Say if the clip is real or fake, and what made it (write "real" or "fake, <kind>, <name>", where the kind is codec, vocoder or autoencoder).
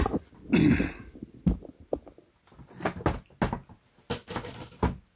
real